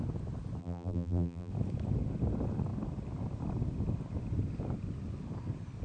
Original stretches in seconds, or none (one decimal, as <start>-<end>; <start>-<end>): 0.0-0.6; 1.5-5.8